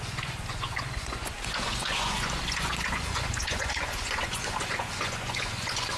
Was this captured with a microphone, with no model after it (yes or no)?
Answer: no